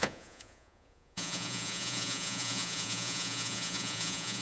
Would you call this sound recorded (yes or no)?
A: no